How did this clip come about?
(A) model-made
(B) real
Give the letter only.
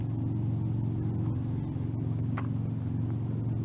B